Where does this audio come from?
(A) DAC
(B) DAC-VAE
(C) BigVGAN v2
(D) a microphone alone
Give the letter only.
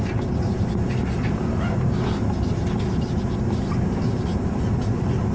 D